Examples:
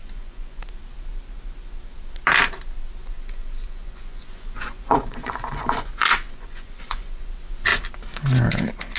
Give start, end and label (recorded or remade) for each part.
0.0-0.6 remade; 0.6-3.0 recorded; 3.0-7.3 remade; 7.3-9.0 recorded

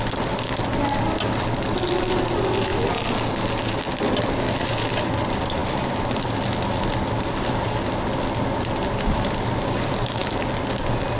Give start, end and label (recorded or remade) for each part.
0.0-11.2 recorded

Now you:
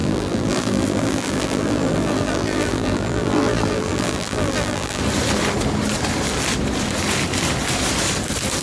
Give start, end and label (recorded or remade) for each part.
0.0-5.0 remade; 5.0-8.6 recorded

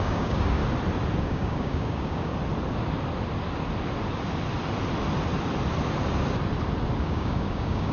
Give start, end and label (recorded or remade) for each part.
0.0-0.6 remade; 0.6-1.2 recorded; 1.2-2.3 remade; 2.3-7.0 recorded; 7.0-7.9 remade